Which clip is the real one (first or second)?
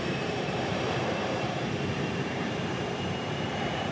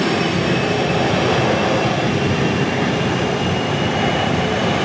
second